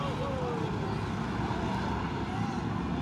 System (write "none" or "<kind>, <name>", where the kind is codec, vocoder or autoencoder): none